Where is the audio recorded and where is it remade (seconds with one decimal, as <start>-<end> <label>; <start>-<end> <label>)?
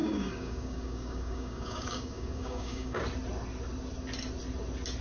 0.0-3.0 remade; 3.0-5.0 recorded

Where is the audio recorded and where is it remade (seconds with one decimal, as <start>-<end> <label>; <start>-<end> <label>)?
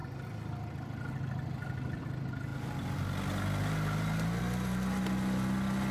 0.0-5.9 recorded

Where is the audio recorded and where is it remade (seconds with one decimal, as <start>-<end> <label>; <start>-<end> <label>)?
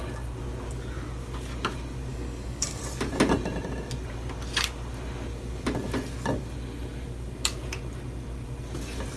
0.0-2.1 recorded; 2.1-2.8 remade; 2.8-9.2 recorded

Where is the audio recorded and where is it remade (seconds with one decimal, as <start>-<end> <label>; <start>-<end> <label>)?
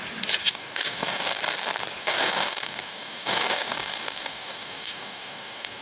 0.0-0.4 recorded; 0.4-1.4 remade; 1.4-2.0 recorded; 2.0-5.8 remade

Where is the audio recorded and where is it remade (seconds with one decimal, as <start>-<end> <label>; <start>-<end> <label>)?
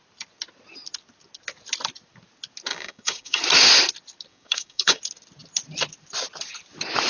0.0-2.7 recorded; 2.7-3.4 remade; 3.4-4.3 recorded; 4.3-5.0 remade; 5.0-7.1 recorded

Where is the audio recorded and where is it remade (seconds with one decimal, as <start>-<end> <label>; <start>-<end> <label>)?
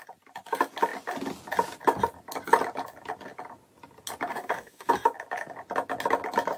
0.0-4.3 recorded; 4.3-4.9 remade; 4.9-6.6 recorded